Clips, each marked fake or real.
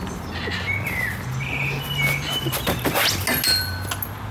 real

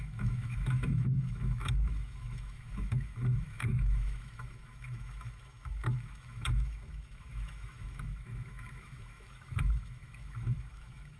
fake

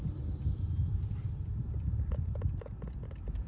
real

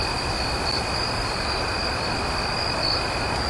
real